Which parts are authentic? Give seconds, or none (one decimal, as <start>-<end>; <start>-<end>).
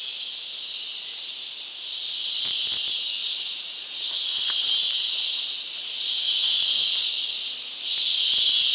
0.0-3.2; 4.5-5.5; 6.8-8.7